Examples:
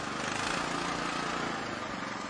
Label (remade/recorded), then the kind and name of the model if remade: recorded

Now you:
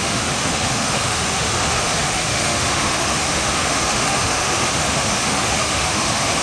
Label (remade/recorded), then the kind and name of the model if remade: remade, autoencoder, DAC-VAE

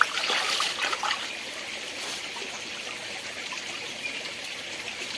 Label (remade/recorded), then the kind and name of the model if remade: remade, vocoder, BigVGAN v2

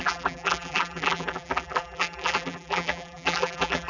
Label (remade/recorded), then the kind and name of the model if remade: remade, vocoder, BigVGAN v2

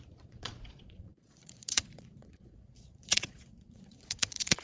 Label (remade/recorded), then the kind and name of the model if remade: remade, vocoder, Vocos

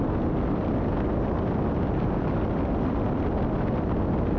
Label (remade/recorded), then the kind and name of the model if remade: recorded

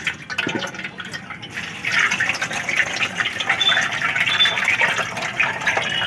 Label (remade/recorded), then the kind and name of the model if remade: recorded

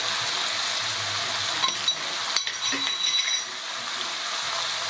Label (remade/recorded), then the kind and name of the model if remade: recorded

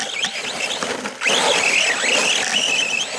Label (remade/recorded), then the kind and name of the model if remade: recorded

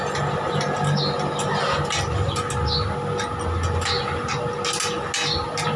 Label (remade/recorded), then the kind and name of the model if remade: recorded